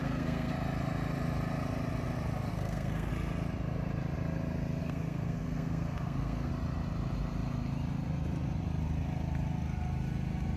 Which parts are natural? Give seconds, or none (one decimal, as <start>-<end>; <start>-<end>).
0.5-2.5; 3.1-4.8; 6.5-10.6